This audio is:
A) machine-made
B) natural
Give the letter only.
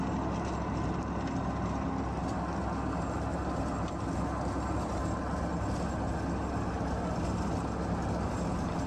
B